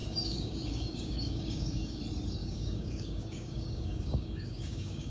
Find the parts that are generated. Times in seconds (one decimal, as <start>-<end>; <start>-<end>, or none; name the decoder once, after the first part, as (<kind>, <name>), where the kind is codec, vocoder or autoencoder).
0.0-2.0 (codec, DAC); 2.4-5.1